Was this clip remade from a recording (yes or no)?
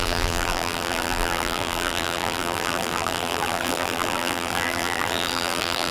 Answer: yes